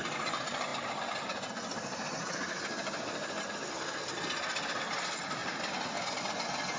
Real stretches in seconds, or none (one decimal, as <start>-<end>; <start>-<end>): 0.0-6.8